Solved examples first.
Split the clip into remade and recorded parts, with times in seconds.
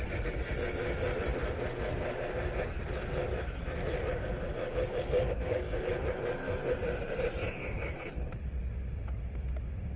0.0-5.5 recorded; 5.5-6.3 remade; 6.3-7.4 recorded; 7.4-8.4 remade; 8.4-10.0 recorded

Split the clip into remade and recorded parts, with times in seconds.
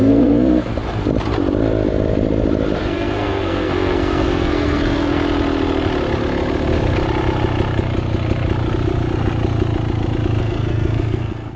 0.0-0.7 remade; 0.7-2.8 recorded; 2.8-5.2 remade; 5.2-10.4 recorded; 10.4-11.6 remade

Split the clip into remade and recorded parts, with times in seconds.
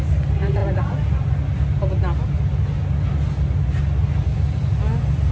0.0-5.3 recorded